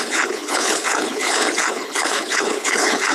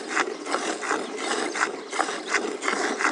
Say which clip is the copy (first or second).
first